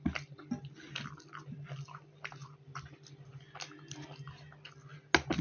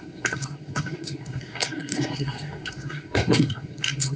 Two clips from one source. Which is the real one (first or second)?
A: first